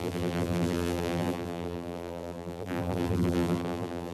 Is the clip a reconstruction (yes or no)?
yes